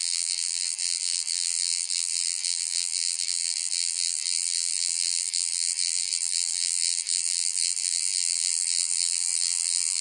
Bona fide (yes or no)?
no